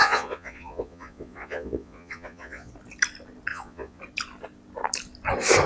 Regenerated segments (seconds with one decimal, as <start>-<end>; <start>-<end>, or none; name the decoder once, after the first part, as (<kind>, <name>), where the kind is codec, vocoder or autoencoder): 0.0-2.7 (vocoder, Vocos); 3.5-4.0